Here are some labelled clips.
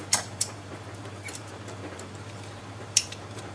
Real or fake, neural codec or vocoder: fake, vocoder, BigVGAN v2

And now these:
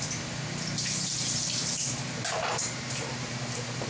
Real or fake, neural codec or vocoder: fake, vocoder, BigVGAN v2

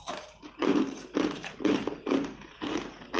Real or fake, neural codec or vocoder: fake, vocoder, BigVGAN v2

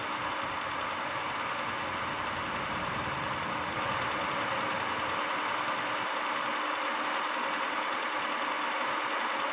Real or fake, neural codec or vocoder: real